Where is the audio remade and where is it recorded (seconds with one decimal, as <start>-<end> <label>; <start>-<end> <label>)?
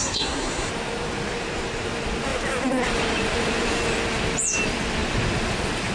0.0-0.7 remade; 0.7-5.9 recorded